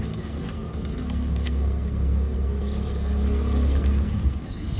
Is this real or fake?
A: fake